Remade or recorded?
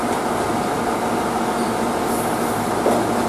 recorded